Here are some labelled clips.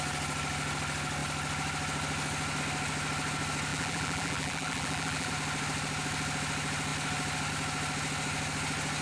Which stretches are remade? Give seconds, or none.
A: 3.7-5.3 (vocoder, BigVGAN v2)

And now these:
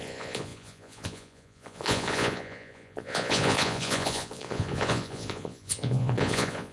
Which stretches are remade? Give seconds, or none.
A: 0.0-6.7 (vocoder, Vocos)

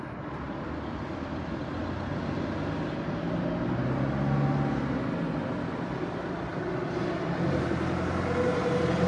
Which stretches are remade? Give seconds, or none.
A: none

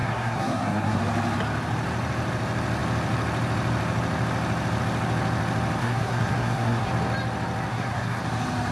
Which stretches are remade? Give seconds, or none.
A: 0.0-1.0 (codec, SNAC); 5.8-6.9; 7.7-8.2

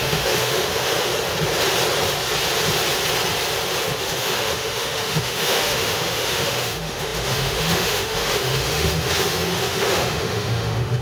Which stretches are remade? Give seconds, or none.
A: 0.0-1.1 (autoencoder, DAC-VAE); 3.8-11.0

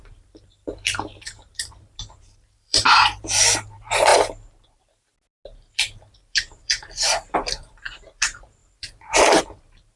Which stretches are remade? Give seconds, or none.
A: 0.0-4.1 (vocoder, BigVGAN v2); 5.7-10.0

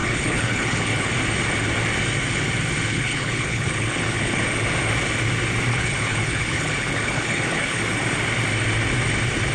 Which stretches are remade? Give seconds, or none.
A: 0.0-1.1 (codec, HILCodec); 2.9-4.4; 5.7-7.8

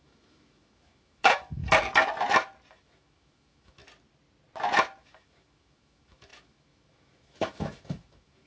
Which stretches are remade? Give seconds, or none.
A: 0.0-1.6 (autoencoder, DAC-VAE); 2.7-3.8; 5.0-8.5